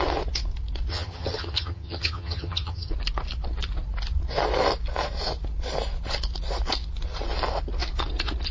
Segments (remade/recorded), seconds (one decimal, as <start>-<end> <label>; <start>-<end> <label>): 0.0-0.9 recorded; 0.9-2.9 remade; 2.9-8.5 recorded